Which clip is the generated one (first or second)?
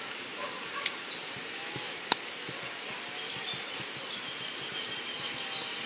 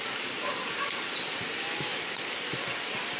second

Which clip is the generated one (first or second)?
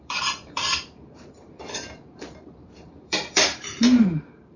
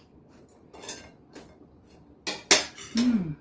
first